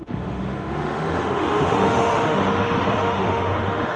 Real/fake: fake